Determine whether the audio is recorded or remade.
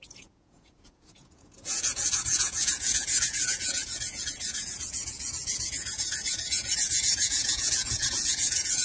remade